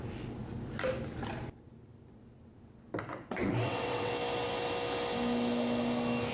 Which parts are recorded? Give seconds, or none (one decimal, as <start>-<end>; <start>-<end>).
0.0-3.1; 4.1-6.3